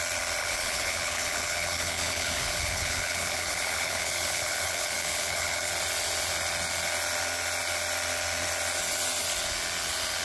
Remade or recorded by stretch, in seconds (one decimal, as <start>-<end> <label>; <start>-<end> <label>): 0.0-0.4 recorded; 0.4-5.7 remade; 5.7-10.2 recorded